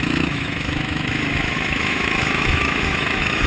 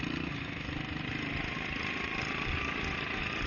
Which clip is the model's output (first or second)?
first